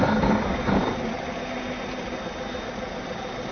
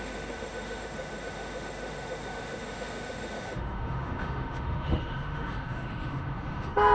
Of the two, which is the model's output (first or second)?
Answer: second